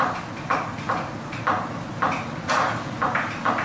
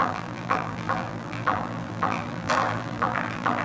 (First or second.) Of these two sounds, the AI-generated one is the second